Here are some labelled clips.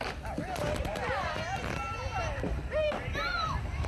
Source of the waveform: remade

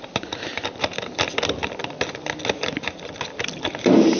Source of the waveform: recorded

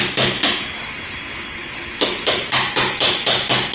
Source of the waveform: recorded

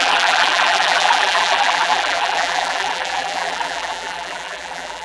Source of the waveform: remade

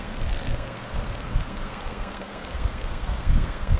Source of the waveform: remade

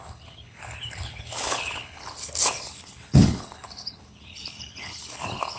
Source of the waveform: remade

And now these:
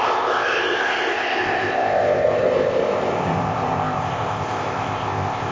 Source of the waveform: remade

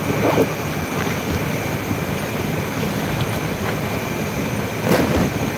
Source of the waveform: recorded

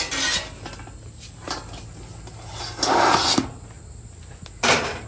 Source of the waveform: recorded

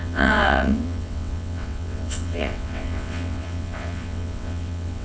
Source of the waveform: remade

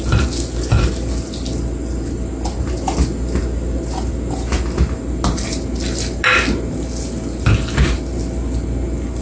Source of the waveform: recorded